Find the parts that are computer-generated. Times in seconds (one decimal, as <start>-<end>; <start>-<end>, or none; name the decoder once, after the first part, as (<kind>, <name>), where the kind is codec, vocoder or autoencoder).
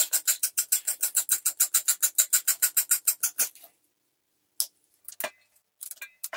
none